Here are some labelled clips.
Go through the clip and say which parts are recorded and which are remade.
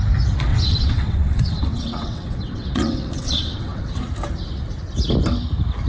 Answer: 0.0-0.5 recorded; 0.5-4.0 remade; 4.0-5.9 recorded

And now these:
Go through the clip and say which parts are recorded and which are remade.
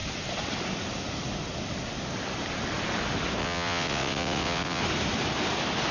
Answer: 0.0-3.4 recorded; 3.4-4.8 remade; 4.8-5.9 recorded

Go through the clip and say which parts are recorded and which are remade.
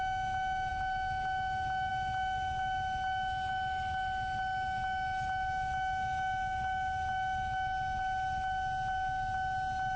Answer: 0.0-10.0 recorded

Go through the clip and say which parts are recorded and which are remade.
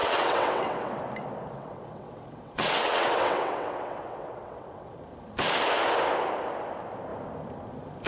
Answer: 0.0-1.0 remade; 1.0-1.6 recorded; 1.6-5.0 remade; 5.0-8.1 recorded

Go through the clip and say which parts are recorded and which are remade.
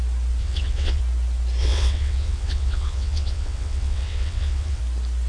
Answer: 0.0-0.4 recorded; 0.4-1.0 remade; 1.0-1.6 recorded; 1.6-4.8 remade; 4.8-5.3 recorded